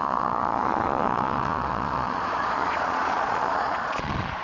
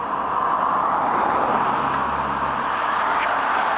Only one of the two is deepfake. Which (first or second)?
first